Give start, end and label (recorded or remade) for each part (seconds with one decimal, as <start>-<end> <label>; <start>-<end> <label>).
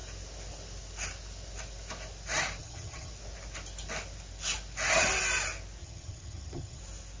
0.0-2.6 recorded; 2.6-3.1 remade; 3.1-5.8 recorded; 5.8-6.8 remade; 6.8-7.2 recorded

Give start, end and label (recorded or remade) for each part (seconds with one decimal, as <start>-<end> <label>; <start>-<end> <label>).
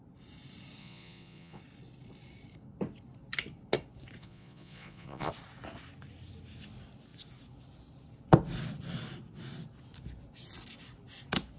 0.0-0.8 recorded; 0.8-1.6 remade; 1.6-4.2 recorded; 4.2-5.3 remade; 5.3-11.6 recorded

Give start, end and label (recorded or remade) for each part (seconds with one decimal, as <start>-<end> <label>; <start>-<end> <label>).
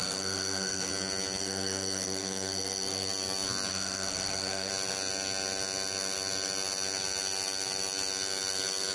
0.0-0.9 remade; 0.9-1.4 recorded; 1.4-3.1 remade; 3.1-3.7 recorded; 3.7-4.7 remade; 4.7-8.9 recorded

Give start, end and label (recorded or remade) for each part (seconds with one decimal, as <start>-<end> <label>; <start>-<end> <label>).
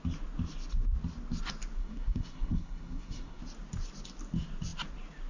0.0-1.8 recorded; 1.8-3.4 remade; 3.4-5.3 recorded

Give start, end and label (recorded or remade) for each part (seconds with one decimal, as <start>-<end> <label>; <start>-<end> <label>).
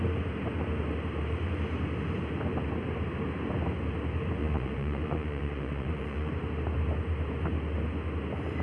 0.0-4.4 recorded; 4.4-6.3 remade; 6.3-8.6 recorded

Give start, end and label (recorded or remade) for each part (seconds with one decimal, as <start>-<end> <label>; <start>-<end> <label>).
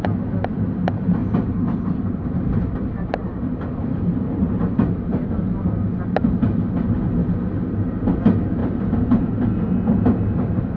0.0-1.2 recorded; 1.2-5.5 remade; 5.5-7.2 recorded; 7.2-7.8 remade; 7.8-8.6 recorded; 8.6-9.4 remade; 9.4-10.8 recorded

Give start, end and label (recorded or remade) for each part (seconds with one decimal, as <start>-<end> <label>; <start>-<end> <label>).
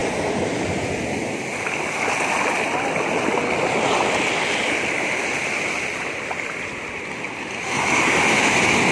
0.0-8.9 recorded